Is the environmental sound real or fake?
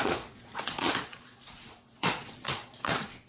fake